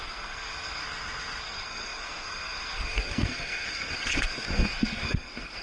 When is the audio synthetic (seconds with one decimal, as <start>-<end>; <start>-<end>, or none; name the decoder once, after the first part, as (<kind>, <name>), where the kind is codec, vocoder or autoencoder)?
0.0-0.8 (codec, SNAC); 1.4-5.6